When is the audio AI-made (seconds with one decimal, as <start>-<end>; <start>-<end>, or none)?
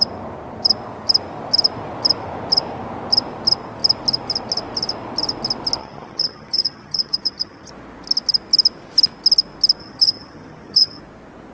5.8-7.7; 9.8-11.0